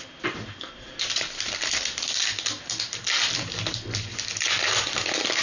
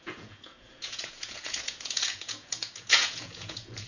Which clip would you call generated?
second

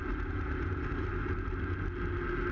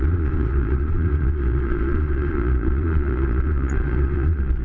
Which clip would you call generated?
second